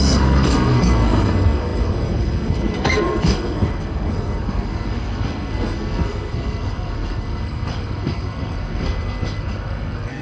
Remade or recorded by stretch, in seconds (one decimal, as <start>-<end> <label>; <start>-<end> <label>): 0.0-10.2 remade

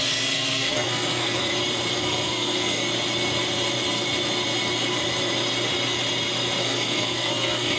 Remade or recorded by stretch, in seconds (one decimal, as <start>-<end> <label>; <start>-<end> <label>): 0.0-1.4 remade; 1.4-1.9 recorded; 1.9-2.8 remade; 2.8-6.6 recorded; 6.6-7.8 remade

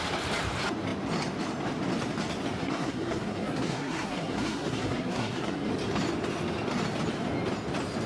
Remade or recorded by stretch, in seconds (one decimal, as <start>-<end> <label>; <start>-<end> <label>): 0.0-2.6 recorded; 2.6-5.7 remade; 5.7-8.1 recorded

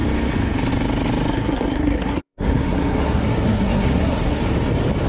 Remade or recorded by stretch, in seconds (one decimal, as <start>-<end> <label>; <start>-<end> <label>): 0.0-1.3 recorded; 1.3-4.4 remade; 4.4-5.1 recorded

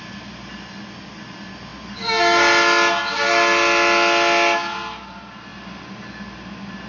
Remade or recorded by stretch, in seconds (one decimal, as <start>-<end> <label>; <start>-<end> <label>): 0.0-6.9 recorded

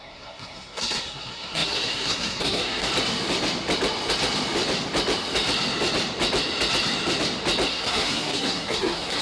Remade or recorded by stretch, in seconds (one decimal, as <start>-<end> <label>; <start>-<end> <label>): 0.0-2.9 remade; 2.9-7.7 recorded; 7.7-9.2 remade

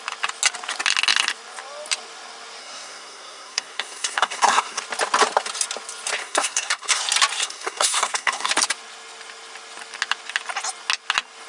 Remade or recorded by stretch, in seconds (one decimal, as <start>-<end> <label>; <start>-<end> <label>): 0.0-2.6 recorded; 2.6-4.8 remade; 4.8-6.2 recorded; 6.2-7.0 remade; 7.0-7.4 recorded; 7.4-8.5 remade; 8.5-11.5 recorded

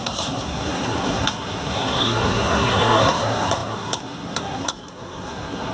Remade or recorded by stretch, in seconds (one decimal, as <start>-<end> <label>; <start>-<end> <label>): 0.0-5.7 remade